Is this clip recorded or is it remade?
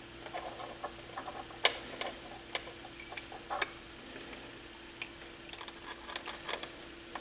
recorded